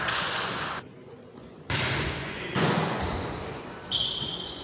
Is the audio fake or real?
fake